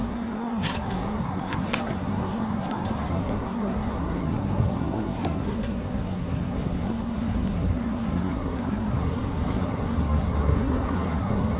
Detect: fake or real fake